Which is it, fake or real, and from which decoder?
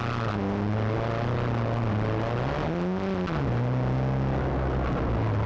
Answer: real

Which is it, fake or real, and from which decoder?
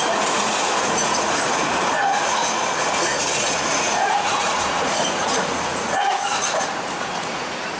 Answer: fake, vocoder, Vocos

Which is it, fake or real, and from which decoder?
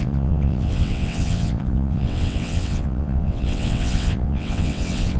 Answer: fake, vocoder, WaveNeXt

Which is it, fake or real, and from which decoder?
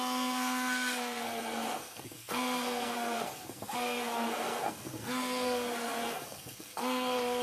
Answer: fake, codec, SNAC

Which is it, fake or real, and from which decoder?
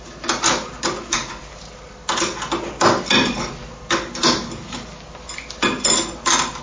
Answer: real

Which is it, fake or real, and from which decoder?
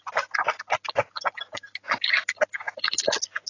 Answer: real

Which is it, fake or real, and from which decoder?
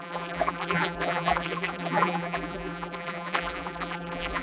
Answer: fake, vocoder, BigVGAN v2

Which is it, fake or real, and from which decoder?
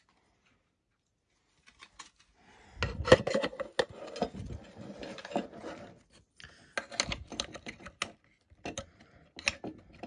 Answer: real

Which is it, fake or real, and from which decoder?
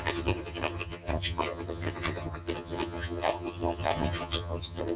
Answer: fake, vocoder, HiFi-GAN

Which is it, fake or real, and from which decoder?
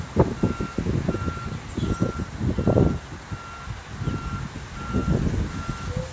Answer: real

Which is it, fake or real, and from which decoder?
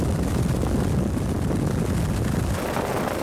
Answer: real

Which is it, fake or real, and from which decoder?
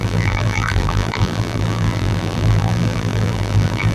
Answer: fake, vocoder, BigVGAN v2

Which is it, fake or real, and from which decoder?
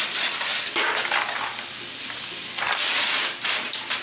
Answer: real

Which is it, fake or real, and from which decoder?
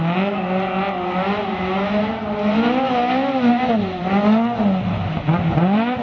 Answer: real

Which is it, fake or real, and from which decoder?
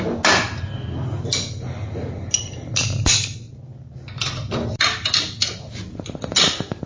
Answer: real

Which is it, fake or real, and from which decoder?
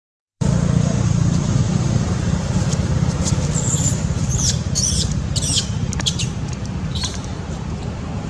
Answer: fake, vocoder, BigVGAN v2